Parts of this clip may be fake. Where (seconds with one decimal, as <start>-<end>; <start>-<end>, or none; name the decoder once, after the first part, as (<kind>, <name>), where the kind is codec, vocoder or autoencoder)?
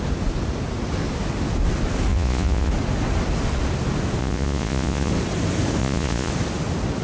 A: 2.1-2.7 (vocoder, Vocos); 4.2-5.1; 5.8-6.3